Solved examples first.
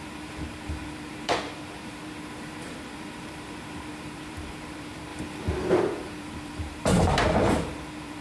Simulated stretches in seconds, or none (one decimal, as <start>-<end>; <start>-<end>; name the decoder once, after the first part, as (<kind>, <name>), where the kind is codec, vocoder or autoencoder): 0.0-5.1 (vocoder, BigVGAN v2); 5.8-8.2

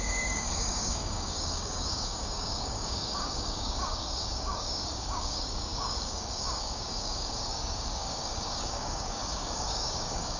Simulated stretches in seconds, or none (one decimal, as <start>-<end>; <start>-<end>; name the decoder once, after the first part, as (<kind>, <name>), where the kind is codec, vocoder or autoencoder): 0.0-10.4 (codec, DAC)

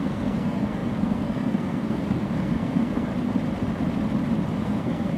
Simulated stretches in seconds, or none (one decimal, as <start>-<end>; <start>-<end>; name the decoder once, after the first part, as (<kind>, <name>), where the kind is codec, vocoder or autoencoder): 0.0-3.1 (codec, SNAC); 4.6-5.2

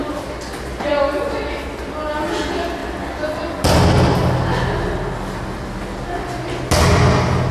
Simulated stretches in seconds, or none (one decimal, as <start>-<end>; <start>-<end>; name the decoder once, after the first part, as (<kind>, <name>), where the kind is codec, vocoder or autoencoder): none

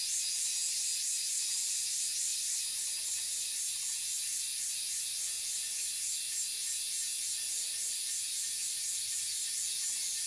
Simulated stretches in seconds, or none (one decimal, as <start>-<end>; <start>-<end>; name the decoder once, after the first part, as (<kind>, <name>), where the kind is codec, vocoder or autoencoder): 2.3-5.0 (vocoder, BigVGAN v2)

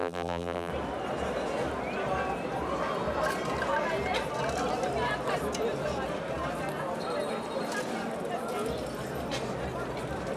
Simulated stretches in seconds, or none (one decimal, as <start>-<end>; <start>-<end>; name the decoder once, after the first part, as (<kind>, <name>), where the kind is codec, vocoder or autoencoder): 0.0-0.7 (vocoder, BigVGAN v2)